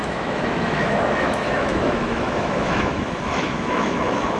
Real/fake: fake